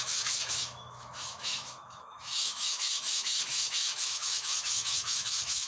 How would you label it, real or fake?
fake